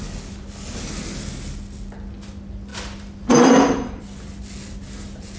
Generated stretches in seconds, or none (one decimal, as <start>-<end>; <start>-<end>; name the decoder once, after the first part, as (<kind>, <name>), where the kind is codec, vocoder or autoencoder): none